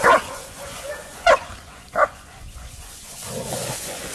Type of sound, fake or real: fake